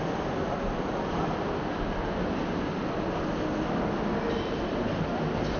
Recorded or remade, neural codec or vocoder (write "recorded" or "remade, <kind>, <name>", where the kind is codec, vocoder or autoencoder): recorded